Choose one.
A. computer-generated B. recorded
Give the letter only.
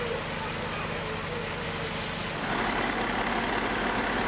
B